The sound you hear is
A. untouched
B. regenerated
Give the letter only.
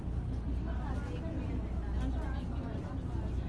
A